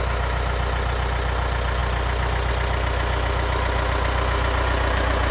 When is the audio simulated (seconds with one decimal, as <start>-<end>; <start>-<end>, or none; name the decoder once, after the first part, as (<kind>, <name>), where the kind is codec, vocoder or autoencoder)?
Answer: none